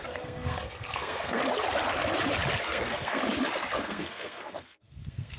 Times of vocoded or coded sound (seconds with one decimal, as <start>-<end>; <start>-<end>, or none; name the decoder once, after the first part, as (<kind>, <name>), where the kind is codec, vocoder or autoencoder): 0.0-1.4 (codec, SNAC); 2.6-3.2; 3.8-5.4